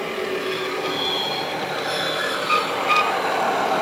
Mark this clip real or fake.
real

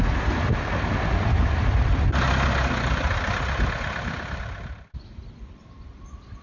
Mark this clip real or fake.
real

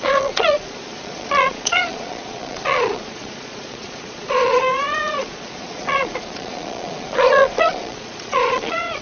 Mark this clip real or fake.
fake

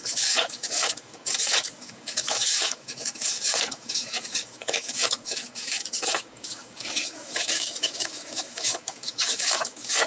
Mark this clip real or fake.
fake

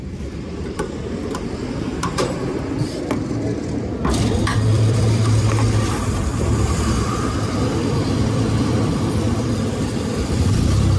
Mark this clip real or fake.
fake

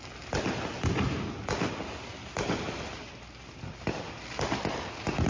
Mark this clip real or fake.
real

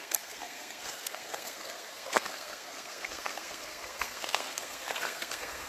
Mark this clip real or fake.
fake